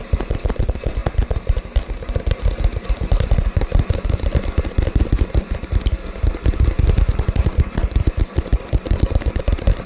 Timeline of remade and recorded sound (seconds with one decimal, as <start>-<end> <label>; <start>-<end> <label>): 0.0-9.9 recorded